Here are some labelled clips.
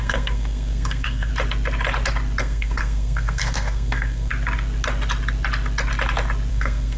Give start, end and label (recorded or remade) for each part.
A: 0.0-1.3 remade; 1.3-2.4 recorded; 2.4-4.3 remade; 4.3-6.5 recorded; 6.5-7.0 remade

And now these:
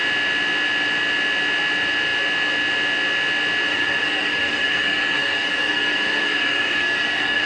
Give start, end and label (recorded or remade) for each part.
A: 0.0-3.7 recorded; 3.7-7.5 remade

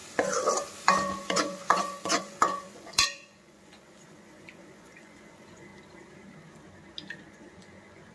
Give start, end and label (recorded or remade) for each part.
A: 0.0-1.2 recorded; 1.2-5.7 remade; 5.7-7.2 recorded; 7.2-8.1 remade